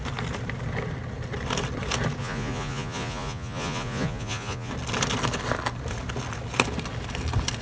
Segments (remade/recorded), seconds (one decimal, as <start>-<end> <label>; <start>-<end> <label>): 0.0-2.2 recorded; 2.2-4.7 remade; 4.7-7.6 recorded